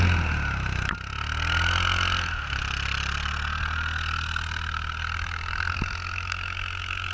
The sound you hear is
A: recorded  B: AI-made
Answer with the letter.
A